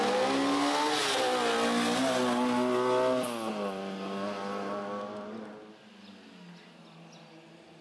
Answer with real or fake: real